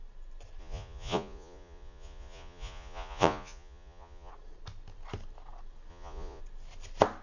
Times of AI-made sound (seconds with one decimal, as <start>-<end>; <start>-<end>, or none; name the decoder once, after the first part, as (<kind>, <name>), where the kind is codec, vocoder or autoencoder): 0.6-4.3 (vocoder, Vocos); 5.9-6.4